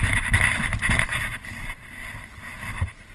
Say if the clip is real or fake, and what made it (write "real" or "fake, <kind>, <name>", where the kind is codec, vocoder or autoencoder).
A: real